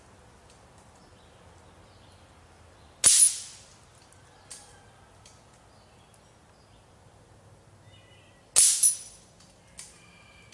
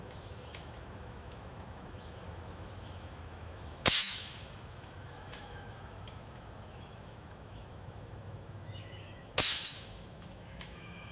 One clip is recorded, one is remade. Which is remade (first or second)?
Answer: second